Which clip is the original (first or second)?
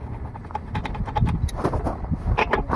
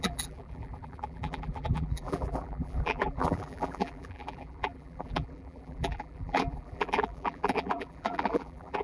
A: first